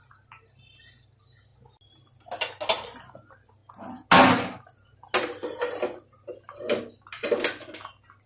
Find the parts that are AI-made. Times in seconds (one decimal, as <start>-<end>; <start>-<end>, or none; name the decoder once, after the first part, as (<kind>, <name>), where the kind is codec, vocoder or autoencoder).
none